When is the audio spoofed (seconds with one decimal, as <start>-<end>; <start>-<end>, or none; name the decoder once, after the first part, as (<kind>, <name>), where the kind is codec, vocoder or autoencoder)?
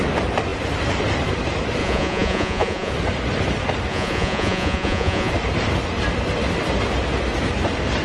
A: 1.8-2.9 (vocoder, Vocos); 3.9-5.3